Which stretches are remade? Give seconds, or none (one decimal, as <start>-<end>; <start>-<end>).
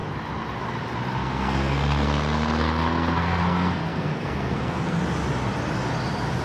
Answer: 1.2-5.0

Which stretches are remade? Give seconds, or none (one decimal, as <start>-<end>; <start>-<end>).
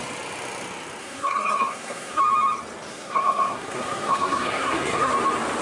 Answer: 1.0-2.2; 2.9-5.1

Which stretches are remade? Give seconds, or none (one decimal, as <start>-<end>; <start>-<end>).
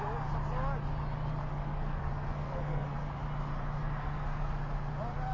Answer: 1.5-3.1; 4.0-4.5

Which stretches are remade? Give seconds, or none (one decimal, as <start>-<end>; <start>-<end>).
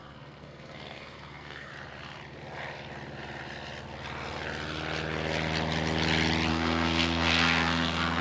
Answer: 0.0-1.7; 6.5-8.2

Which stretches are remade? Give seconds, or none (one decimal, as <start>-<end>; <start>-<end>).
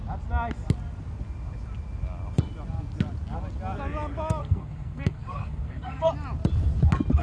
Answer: 4.4-6.1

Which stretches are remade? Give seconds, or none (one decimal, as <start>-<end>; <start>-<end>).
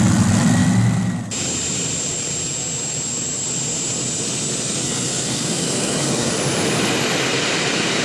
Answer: 4.8-6.3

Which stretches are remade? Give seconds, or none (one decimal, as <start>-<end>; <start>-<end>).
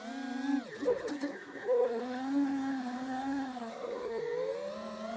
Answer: 1.1-4.2